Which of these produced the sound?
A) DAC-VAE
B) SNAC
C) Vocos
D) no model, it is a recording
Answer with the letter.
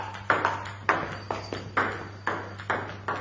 D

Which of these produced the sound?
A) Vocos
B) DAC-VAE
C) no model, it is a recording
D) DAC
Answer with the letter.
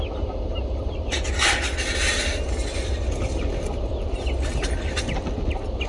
C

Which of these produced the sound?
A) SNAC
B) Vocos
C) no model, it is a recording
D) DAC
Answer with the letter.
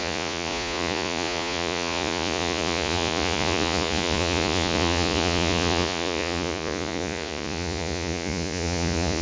B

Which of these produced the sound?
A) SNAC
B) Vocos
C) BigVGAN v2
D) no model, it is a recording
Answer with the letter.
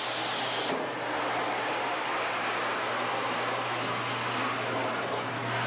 D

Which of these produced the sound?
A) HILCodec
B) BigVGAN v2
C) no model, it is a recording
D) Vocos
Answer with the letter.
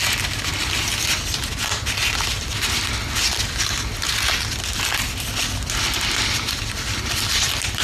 C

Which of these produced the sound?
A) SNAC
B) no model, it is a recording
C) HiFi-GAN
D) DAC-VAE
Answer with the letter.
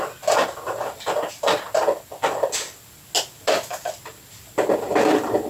B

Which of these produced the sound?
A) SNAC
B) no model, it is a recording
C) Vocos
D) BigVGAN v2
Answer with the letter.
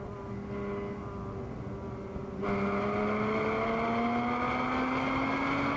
B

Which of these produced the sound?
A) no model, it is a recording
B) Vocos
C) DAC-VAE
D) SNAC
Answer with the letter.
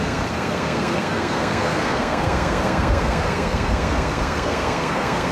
D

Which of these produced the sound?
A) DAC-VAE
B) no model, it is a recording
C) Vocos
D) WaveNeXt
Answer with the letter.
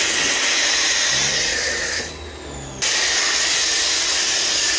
B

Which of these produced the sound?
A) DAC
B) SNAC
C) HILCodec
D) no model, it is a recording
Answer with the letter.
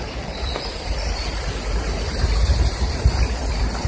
D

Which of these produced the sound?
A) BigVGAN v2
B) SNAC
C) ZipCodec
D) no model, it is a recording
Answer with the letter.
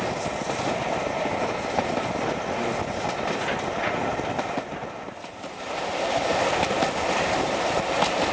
D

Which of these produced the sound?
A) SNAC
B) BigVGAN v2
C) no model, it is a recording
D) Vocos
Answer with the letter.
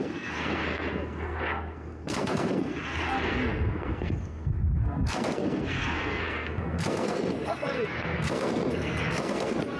A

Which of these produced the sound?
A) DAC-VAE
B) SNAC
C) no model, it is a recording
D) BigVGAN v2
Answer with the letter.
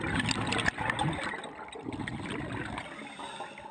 C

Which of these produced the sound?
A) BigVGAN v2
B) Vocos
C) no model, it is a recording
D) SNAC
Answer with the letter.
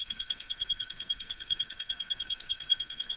D